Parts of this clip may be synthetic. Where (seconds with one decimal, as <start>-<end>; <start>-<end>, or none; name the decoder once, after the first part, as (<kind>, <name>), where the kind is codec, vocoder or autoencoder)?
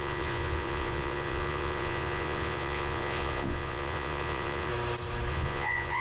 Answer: 0.0-4.7 (vocoder, Vocos); 5.3-6.0